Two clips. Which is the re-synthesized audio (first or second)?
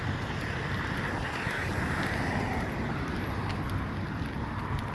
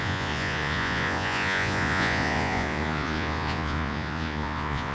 second